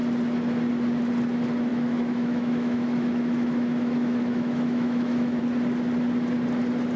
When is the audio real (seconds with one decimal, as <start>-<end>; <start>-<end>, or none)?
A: 0.0-1.7; 5.4-7.0